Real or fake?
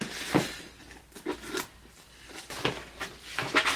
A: real